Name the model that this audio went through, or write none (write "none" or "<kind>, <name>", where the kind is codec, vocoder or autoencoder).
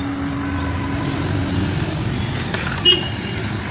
none